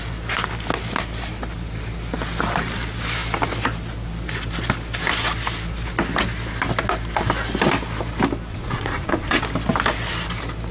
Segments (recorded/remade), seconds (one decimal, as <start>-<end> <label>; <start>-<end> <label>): 0.0-8.5 recorded; 8.5-9.4 remade; 9.4-10.7 recorded